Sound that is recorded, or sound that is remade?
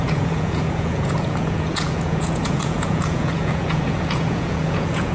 remade